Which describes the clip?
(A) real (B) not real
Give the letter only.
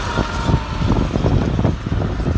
A